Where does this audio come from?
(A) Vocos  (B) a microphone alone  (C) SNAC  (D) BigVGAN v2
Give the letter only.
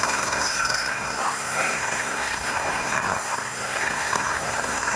C